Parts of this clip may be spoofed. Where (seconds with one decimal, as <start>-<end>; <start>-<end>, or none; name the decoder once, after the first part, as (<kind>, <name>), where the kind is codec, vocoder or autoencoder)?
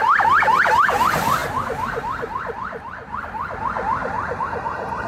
none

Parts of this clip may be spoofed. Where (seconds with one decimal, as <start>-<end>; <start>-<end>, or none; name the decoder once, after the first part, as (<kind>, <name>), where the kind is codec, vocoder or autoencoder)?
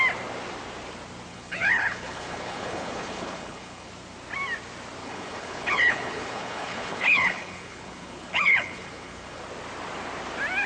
1.3-3.9 (codec, HILCodec); 5.0-9.4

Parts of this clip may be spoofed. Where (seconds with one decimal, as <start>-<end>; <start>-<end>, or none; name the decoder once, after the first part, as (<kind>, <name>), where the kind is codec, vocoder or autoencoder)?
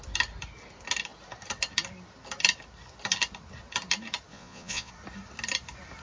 4.3-4.9 (vocoder, Vocos)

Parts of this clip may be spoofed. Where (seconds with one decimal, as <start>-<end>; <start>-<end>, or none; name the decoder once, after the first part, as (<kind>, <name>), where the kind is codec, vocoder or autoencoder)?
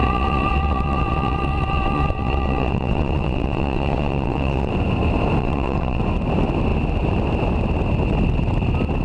0.0-4.7 (vocoder, WaveNeXt); 5.4-6.0